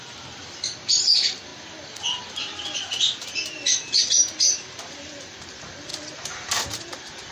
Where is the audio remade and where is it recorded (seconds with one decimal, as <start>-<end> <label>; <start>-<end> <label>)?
0.0-1.5 remade; 1.5-4.0 recorded; 4.0-5.9 remade; 5.9-6.8 recorded; 6.8-7.3 remade

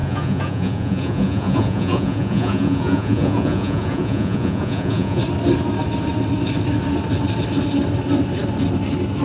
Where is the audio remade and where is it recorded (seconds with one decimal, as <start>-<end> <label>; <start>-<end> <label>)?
0.0-5.2 remade; 5.2-9.2 recorded

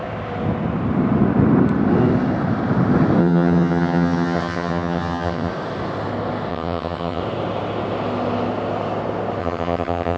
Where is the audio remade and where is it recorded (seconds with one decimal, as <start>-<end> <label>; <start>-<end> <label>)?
0.0-3.2 recorded; 3.2-5.5 remade; 5.5-6.5 recorded; 6.5-7.2 remade; 7.2-9.4 recorded; 9.4-10.2 remade

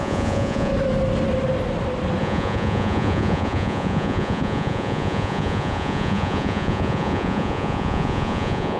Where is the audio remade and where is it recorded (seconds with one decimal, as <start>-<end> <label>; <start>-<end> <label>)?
0.0-0.7 remade; 0.7-2.2 recorded; 2.2-8.8 remade

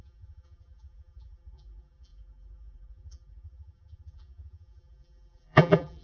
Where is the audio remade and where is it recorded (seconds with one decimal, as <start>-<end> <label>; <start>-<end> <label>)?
0.0-6.0 remade

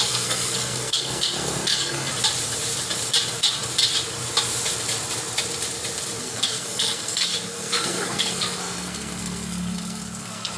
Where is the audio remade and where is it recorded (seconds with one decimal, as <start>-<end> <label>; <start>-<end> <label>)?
0.0-2.1 remade; 2.1-6.2 recorded; 6.2-10.6 remade

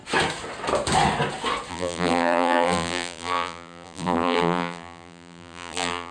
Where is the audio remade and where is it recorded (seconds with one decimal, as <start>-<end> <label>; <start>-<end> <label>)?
0.0-1.7 recorded; 1.7-6.1 remade